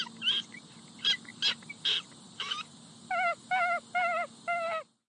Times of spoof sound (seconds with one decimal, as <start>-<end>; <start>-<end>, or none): none